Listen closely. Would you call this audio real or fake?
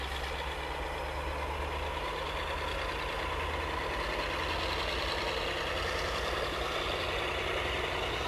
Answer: real